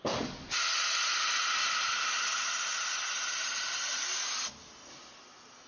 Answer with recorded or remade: recorded